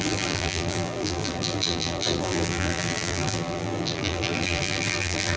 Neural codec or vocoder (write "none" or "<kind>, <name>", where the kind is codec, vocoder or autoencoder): vocoder, BigVGAN v2